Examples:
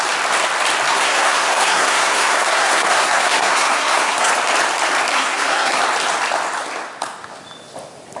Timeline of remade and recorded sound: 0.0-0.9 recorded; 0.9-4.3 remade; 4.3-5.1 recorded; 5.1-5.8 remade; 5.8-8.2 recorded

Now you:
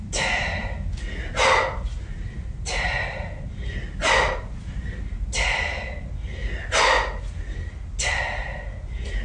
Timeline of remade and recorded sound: 0.0-9.2 recorded

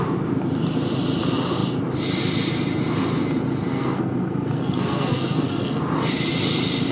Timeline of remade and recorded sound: 0.0-3.7 recorded; 3.7-5.8 remade; 5.8-6.9 recorded